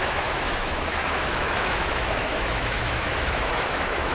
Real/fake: fake